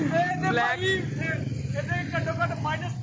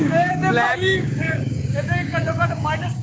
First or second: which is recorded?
first